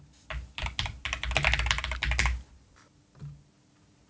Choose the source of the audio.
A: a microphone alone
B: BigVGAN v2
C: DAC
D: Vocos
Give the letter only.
A